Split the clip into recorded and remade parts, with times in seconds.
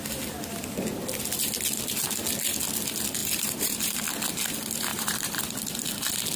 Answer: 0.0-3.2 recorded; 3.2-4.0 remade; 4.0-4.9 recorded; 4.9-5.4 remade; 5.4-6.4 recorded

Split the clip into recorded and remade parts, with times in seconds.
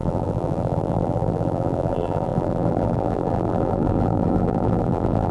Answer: 0.0-5.3 remade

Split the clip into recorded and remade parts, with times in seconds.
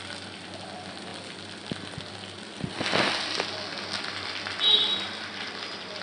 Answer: 0.0-6.0 recorded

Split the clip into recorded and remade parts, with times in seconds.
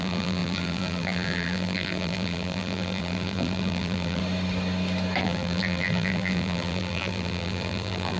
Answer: 0.0-4.2 remade; 4.2-5.2 recorded; 5.2-8.2 remade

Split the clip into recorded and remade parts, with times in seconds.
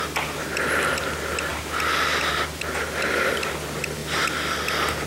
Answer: 0.0-1.5 recorded; 1.5-2.6 remade; 2.6-4.0 recorded; 4.0-5.1 remade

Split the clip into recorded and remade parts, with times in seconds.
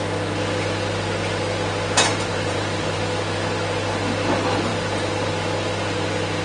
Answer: 0.0-2.1 recorded; 2.1-3.0 remade; 3.0-4.7 recorded; 4.7-5.3 remade; 5.3-6.4 recorded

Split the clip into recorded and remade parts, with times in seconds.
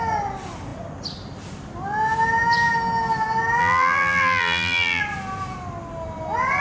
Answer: 0.0-3.6 recorded; 3.6-5.0 remade; 5.0-6.6 recorded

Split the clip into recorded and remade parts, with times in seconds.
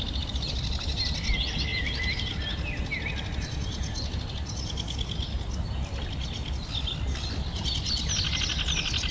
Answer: 0.0-1.7 recorded; 1.7-2.3 remade; 2.3-9.1 recorded